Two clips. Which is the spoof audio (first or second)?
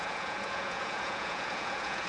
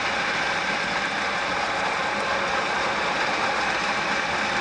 first